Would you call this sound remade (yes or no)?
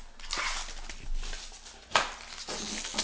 no